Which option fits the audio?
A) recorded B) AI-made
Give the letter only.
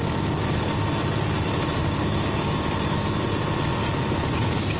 A